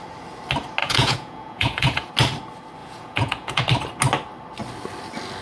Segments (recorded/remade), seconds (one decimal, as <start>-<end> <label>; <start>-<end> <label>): 0.0-0.8 recorded; 0.8-2.1 remade; 2.1-2.8 recorded; 2.8-3.6 remade; 3.6-5.4 recorded

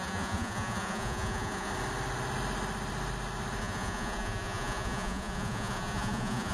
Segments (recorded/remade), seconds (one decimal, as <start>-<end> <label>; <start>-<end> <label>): 0.0-1.7 remade; 1.7-3.6 recorded; 3.6-6.5 remade